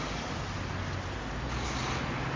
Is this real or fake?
real